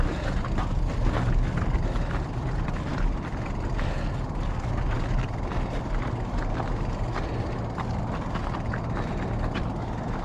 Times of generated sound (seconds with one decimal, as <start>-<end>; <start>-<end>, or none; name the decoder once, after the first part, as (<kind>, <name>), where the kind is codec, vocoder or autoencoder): none